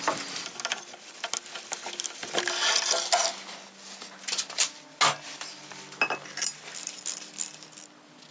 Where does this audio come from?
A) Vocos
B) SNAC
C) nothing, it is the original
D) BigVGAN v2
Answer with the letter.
C